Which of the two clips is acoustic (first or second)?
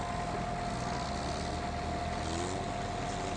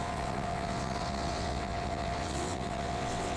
first